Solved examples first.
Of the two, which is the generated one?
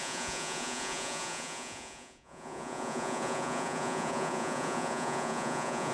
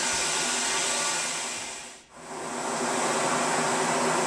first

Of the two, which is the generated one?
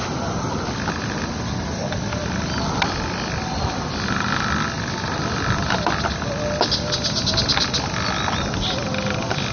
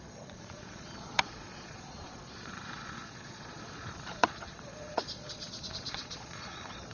second